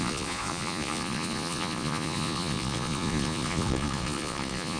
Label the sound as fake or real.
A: fake